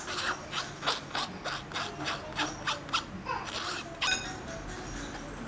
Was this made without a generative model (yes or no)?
yes